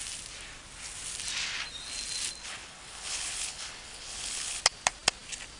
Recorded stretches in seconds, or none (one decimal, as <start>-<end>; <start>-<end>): 0.0-2.4; 4.6-5.6